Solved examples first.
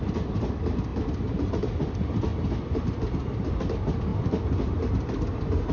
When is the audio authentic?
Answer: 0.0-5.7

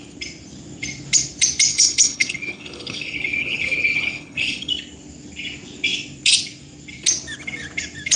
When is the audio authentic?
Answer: 0.0-1.7; 4.7-8.2

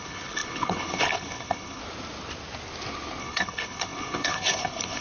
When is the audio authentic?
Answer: 1.8-3.2